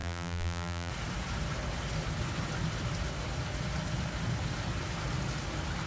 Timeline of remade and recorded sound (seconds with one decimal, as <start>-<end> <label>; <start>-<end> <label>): 0.0-0.9 remade; 0.9-5.9 recorded